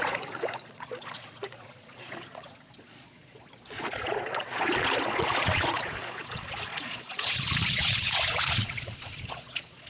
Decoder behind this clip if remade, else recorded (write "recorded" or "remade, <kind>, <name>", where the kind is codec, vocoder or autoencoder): remade, vocoder, Vocos